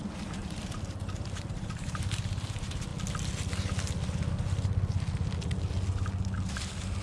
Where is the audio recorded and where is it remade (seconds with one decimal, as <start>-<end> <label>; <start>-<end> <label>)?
0.0-2.9 remade; 2.9-6.5 recorded; 6.5-7.0 remade

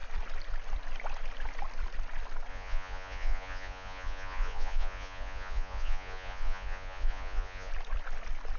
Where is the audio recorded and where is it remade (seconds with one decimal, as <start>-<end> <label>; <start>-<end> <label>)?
0.0-2.5 recorded; 2.5-7.7 remade; 7.7-8.6 recorded

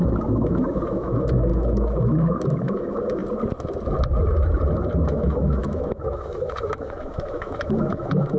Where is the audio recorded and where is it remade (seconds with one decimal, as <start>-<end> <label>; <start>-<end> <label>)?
0.0-3.2 remade; 3.2-5.1 recorded; 5.1-8.4 remade

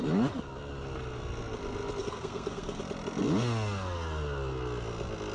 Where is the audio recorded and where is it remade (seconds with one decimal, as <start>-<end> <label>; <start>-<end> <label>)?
0.0-2.0 recorded; 2.0-2.8 remade; 2.8-5.3 recorded

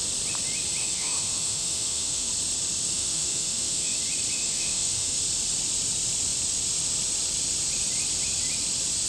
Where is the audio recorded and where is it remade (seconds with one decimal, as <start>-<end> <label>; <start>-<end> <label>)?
0.0-0.8 recorded; 0.8-2.3 remade; 2.3-2.9 recorded; 2.9-4.0 remade; 4.0-4.4 recorded; 4.4-5.2 remade; 5.2-9.1 recorded

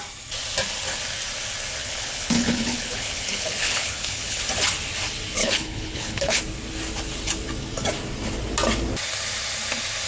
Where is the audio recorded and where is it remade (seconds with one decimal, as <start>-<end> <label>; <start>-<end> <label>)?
0.0-1.8 recorded; 1.8-4.4 remade; 4.4-5.4 recorded; 5.4-6.4 remade; 6.4-10.1 recorded